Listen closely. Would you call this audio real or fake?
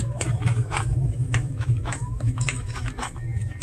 fake